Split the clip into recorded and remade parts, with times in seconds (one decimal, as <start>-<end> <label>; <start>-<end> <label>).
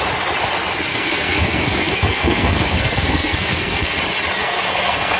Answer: 0.0-0.9 recorded; 0.9-4.0 remade; 4.0-4.4 recorded; 4.4-5.2 remade